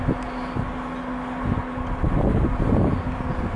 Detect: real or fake real